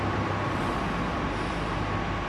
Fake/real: real